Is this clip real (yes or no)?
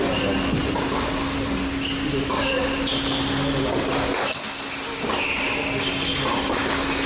yes